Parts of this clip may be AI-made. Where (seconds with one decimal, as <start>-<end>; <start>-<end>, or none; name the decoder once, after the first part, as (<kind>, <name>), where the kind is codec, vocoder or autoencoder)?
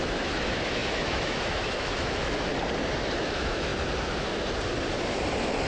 0.0-2.5 (autoencoder, DAC-VAE); 3.2-3.7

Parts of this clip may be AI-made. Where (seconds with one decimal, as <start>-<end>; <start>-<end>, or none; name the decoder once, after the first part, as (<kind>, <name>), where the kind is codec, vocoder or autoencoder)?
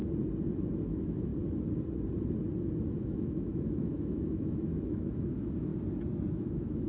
0.8-1.3 (autoencoder, DAC-VAE); 3.0-5.7; 6.3-6.9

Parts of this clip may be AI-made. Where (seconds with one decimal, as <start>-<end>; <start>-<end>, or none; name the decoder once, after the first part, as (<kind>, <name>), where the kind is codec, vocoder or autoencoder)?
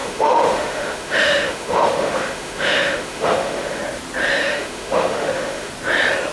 0.0-3.8 (autoencoder, DAC-VAE); 4.4-5.7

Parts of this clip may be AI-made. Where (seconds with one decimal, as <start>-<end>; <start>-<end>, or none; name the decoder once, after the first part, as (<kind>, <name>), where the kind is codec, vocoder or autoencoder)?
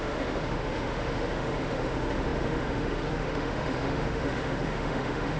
0.0-5.4 (autoencoder, DAC-VAE)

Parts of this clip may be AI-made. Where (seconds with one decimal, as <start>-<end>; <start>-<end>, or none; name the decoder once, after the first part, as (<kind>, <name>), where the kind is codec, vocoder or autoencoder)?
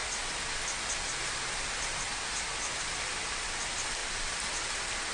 none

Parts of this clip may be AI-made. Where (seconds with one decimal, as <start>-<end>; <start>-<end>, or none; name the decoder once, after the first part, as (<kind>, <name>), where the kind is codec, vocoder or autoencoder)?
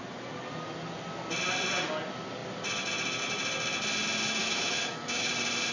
4.4-5.3 (autoencoder, DAC-VAE)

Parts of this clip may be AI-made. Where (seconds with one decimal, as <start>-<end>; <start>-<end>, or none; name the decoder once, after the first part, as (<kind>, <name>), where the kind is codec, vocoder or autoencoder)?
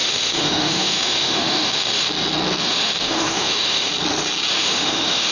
0.0-2.1 (autoencoder, DAC-VAE); 2.6-3.9; 4.5-5.3